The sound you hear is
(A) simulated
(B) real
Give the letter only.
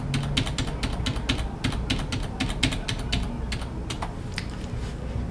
B